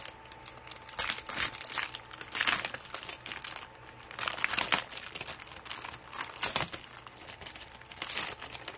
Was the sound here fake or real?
real